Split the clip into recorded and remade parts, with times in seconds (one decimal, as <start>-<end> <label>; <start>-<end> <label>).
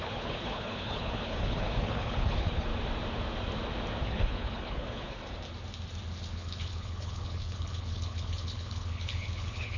0.0-2.7 remade; 2.7-4.0 recorded; 4.0-5.2 remade; 5.2-6.3 recorded; 6.3-9.8 remade